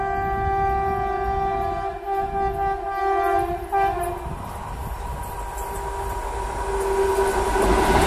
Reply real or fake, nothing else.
real